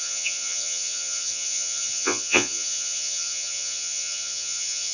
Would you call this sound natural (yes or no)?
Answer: no